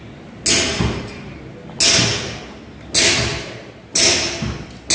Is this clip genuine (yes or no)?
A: yes